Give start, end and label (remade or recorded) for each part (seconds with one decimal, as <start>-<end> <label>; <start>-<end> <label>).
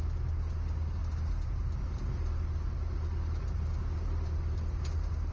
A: 0.0-5.3 recorded